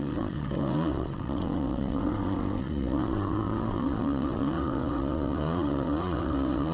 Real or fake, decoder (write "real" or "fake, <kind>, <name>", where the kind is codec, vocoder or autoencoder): fake, vocoder, WaveNeXt